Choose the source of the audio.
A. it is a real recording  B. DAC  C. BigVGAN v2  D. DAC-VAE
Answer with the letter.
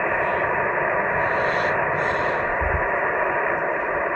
A